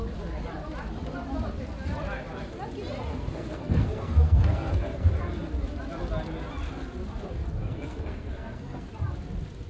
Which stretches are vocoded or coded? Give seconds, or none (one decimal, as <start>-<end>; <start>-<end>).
3.1-5.1; 7.6-8.9